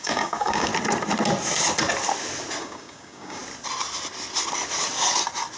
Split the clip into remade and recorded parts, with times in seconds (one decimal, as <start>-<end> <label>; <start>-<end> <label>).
0.0-0.7 remade; 0.7-2.6 recorded; 2.6-3.4 remade; 3.4-5.6 recorded